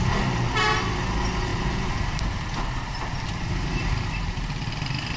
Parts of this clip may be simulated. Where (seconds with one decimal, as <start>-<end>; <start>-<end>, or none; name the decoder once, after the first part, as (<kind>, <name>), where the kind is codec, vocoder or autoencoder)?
1.5-3.9 (vocoder, BigVGAN v2)